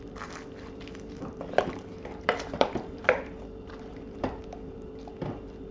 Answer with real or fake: fake